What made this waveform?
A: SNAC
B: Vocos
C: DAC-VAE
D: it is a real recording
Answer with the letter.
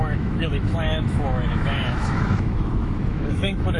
C